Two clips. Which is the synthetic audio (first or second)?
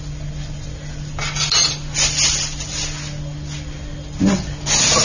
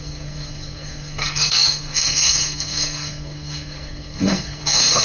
second